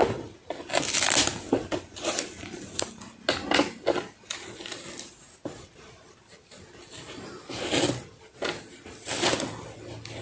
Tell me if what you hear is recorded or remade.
recorded